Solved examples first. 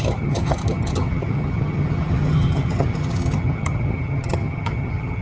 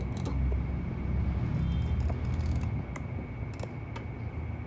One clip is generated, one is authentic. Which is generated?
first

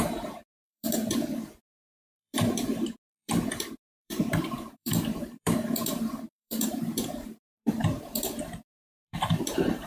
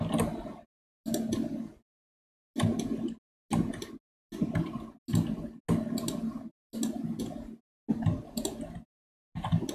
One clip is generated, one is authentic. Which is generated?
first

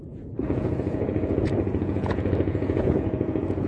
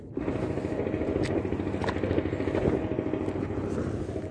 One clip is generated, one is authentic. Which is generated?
first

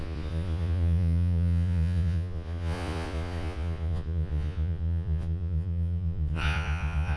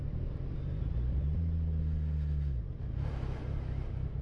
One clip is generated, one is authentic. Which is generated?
first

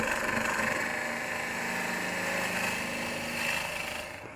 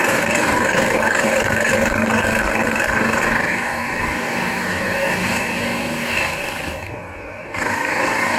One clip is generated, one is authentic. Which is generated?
second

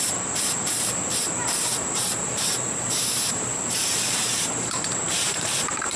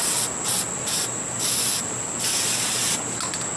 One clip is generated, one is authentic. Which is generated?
first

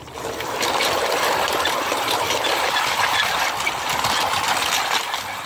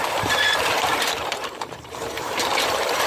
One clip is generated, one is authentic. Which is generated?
second